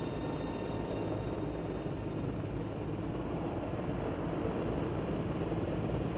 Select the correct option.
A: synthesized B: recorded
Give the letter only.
B